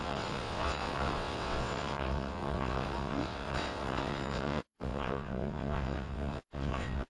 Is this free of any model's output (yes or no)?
no